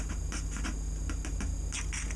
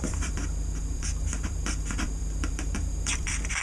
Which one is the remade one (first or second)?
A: second